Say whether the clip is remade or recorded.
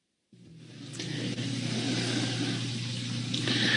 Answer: recorded